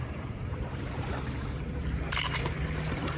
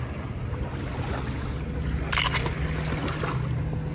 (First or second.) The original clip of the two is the second